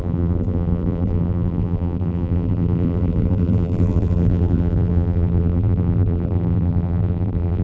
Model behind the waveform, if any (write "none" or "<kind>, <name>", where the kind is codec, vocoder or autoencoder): vocoder, BigVGAN v2